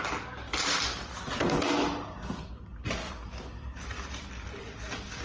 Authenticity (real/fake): real